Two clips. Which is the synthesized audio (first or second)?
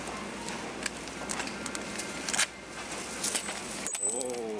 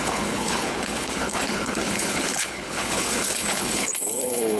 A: second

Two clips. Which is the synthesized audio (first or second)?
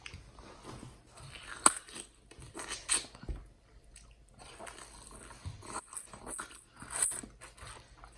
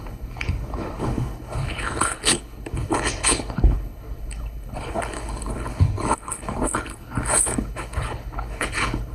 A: second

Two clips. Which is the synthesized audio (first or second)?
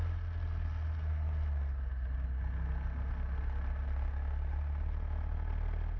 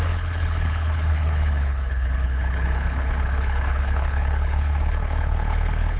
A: second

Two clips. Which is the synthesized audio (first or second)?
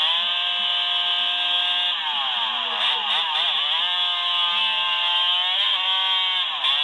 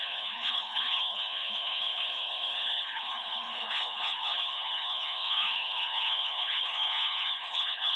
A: second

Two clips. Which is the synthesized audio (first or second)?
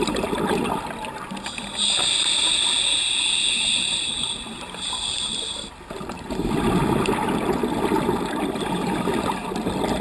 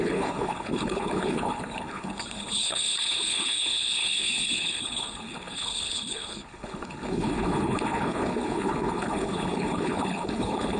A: second